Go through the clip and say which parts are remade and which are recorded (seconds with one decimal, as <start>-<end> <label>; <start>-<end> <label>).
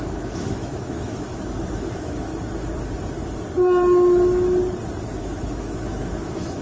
0.0-2.3 remade; 2.3-5.2 recorded; 5.2-6.6 remade